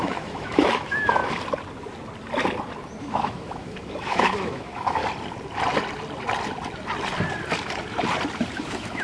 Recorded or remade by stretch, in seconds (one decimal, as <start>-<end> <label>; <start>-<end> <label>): 0.0-1.2 remade; 1.2-3.0 recorded; 3.0-5.0 remade; 5.0-8.6 recorded; 8.6-9.0 remade